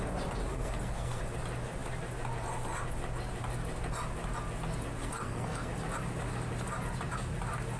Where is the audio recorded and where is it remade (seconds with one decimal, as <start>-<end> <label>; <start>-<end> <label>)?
0.0-0.5 recorded; 0.5-1.2 remade; 1.2-5.0 recorded; 5.0-5.7 remade; 5.7-7.8 recorded